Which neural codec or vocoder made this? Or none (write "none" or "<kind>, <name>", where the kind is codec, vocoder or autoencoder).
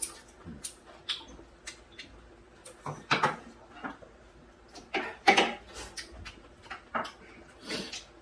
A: none